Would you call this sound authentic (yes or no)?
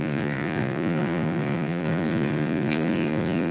no